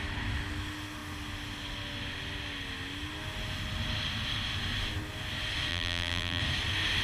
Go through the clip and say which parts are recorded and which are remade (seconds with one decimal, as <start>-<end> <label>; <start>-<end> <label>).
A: 0.0-5.7 recorded; 5.7-6.4 remade; 6.4-7.0 recorded